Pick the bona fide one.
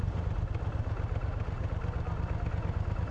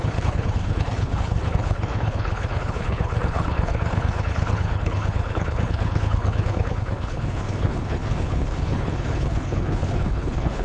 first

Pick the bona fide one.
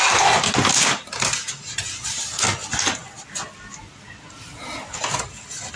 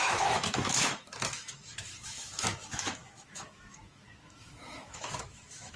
first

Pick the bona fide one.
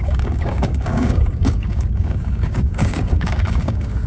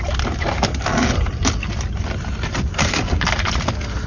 second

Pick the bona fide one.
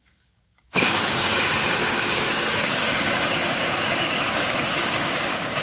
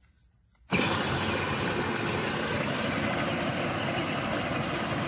second